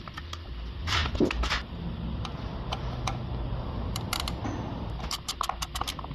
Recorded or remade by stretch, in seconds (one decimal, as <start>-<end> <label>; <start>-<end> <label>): 0.0-1.0 remade; 1.0-3.7 recorded; 3.7-6.1 remade